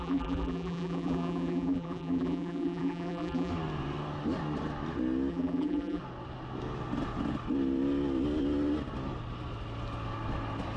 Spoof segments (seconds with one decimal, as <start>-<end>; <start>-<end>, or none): 0.0-3.5; 5.3-6.0